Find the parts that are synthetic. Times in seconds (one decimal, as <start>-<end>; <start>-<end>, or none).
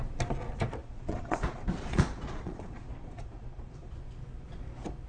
0.8-3.9